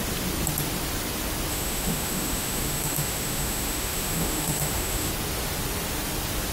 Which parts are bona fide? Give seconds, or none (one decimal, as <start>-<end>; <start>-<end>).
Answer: 0.0-1.5; 5.1-6.5